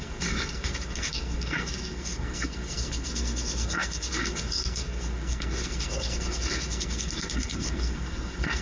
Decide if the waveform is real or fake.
fake